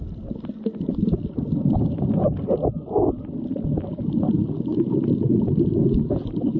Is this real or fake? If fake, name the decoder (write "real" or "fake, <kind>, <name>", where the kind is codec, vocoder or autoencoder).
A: real